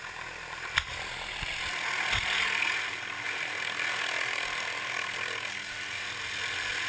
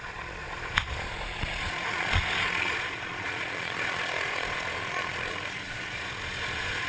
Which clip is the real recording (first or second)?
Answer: first